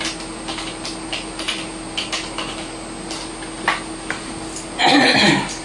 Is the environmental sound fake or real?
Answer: real